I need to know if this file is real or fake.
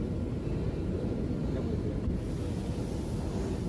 real